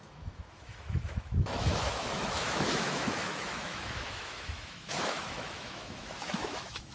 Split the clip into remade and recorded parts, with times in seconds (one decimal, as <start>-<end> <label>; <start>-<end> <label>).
0.0-6.9 remade